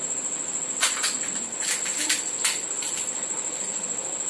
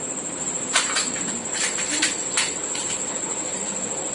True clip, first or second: first